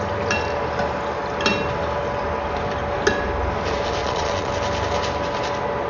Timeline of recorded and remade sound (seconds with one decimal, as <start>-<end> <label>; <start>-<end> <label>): 0.0-4.0 recorded; 4.0-4.5 remade; 4.5-5.9 recorded

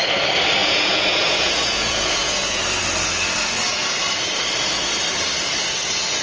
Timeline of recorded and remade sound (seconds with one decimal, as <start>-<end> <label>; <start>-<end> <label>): 0.0-0.6 recorded; 0.6-2.6 remade; 2.6-6.2 recorded

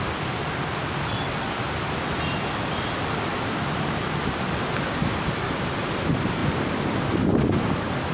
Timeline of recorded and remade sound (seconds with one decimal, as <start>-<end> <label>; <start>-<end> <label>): 0.0-8.1 recorded

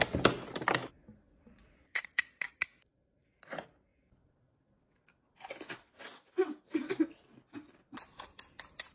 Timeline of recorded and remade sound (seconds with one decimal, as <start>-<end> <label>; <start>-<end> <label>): 0.0-1.3 recorded; 1.3-2.6 remade; 2.6-8.9 recorded

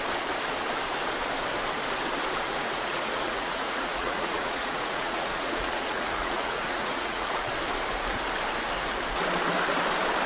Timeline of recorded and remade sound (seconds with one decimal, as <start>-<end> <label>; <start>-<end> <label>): 0.0-2.5 recorded; 2.5-7.5 remade; 7.5-10.3 recorded

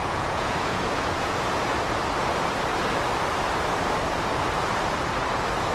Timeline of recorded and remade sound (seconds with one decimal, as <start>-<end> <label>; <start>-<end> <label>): 0.0-1.7 remade; 1.7-5.7 recorded

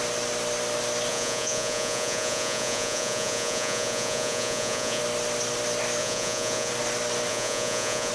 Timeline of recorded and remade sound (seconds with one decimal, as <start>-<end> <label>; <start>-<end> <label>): 0.0-1.1 recorded; 1.1-5.0 remade; 5.0-6.0 recorded; 6.0-6.7 remade; 6.7-7.3 recorded; 7.3-8.1 remade